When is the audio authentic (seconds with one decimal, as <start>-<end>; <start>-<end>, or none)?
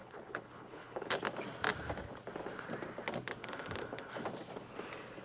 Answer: 1.2-3.4; 4.2-5.2